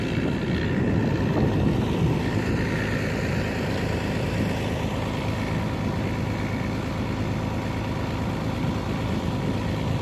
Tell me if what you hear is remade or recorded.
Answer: recorded